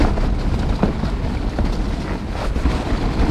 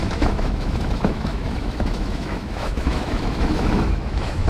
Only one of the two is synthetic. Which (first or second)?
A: second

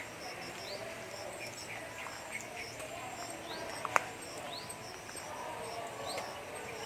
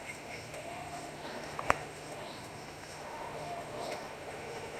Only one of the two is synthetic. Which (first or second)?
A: second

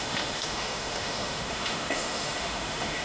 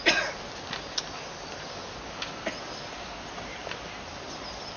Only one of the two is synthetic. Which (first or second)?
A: first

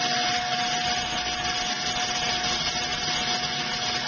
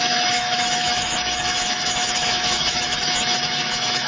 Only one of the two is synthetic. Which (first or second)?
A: second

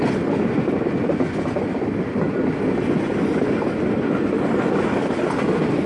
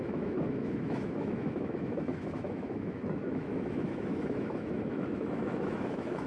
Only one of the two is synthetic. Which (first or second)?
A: second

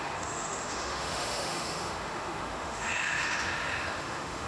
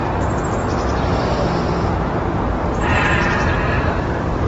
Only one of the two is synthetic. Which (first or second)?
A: first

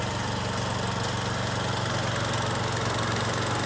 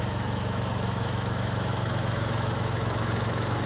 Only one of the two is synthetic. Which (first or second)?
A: second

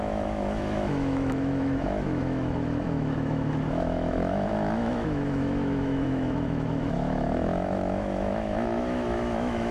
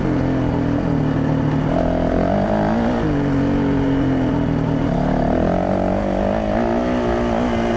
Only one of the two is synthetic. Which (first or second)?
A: first